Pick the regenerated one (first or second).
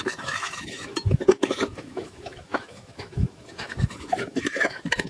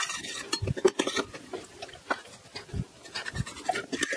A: first